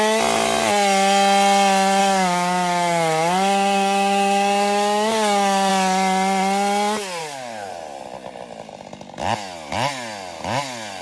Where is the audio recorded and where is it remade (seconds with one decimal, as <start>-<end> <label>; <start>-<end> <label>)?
0.0-2.0 recorded; 2.0-5.7 remade; 5.7-7.2 recorded; 7.2-7.7 remade; 7.7-11.0 recorded